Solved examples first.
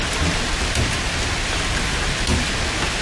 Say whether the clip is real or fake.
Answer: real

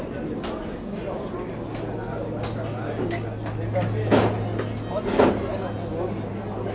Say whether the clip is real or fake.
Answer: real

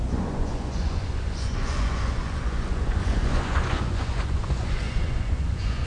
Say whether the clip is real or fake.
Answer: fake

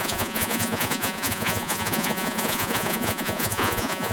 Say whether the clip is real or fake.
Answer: fake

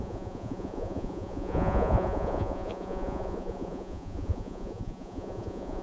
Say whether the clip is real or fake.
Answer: fake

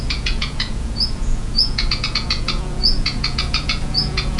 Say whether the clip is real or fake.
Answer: fake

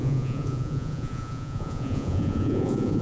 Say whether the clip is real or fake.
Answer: fake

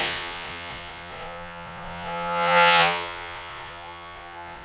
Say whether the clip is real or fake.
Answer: fake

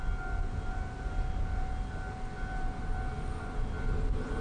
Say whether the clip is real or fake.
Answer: real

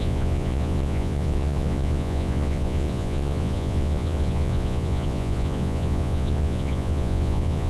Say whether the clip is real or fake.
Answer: fake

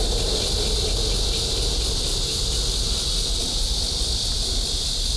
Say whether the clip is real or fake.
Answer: real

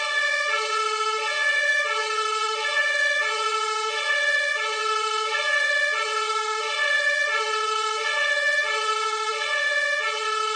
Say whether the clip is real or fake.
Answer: fake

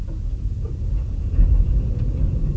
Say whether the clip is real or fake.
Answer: fake